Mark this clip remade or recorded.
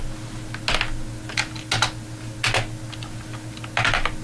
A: recorded